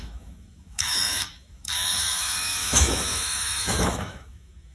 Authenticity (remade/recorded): remade